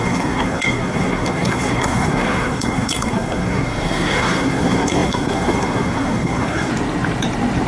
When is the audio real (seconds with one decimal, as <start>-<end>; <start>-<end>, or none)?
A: 6.7-7.7

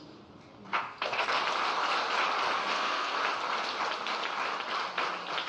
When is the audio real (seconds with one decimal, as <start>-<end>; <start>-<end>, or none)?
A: 0.0-0.7; 1.4-2.6; 3.2-5.5

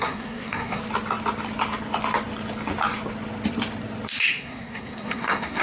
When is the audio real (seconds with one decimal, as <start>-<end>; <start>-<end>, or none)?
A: 0.8-4.2

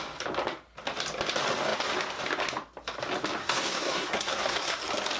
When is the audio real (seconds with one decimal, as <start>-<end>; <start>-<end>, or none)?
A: 0.0-3.4; 4.8-5.2

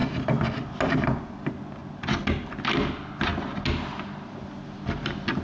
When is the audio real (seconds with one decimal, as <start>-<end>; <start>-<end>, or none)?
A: 0.0-5.4

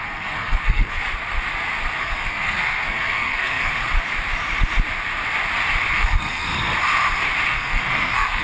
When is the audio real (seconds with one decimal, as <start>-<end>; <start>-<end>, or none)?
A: 1.0-2.0; 3.7-5.9; 6.5-7.5

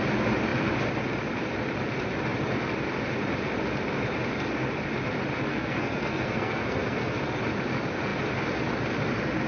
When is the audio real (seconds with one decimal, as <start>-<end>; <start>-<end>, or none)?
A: 0.0-5.5; 7.2-9.5

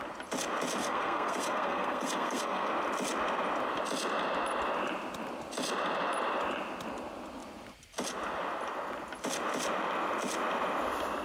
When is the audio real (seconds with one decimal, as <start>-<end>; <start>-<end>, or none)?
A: 0.0-0.8; 2.7-11.2